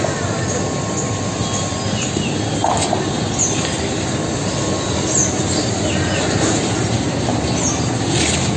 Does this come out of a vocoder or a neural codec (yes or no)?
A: no